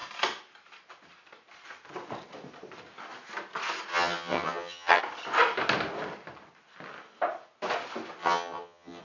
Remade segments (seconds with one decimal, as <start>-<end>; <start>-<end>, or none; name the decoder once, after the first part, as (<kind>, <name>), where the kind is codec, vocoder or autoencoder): 3.9-5.0 (vocoder, HiFi-GAN); 8.2-9.0